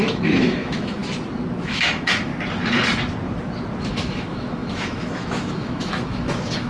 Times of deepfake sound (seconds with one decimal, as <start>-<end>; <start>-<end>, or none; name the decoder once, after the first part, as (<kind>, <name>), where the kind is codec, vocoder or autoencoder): 0.0-1.0 (autoencoder, DAC-VAE); 1.6-2.3; 3.9-6.7